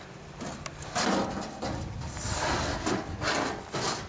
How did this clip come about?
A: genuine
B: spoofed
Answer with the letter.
A